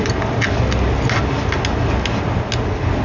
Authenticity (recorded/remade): recorded